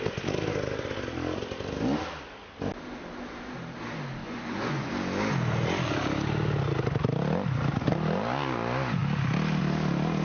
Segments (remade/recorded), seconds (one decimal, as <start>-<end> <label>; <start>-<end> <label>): 0.0-4.2 recorded; 4.2-4.9 remade; 4.9-10.2 recorded